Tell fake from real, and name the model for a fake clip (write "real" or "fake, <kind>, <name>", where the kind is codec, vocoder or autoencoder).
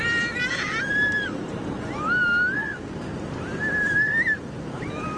real